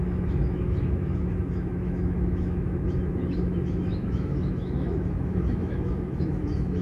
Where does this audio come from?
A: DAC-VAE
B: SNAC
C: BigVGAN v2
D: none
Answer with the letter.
A